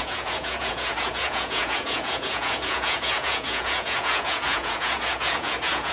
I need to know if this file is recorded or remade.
remade